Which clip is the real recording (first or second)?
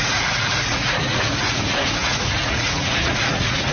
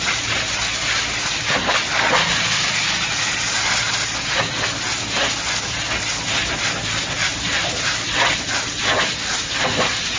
second